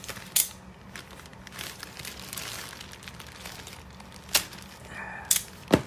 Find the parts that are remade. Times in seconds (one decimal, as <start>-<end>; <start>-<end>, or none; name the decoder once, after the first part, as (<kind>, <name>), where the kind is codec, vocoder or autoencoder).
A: none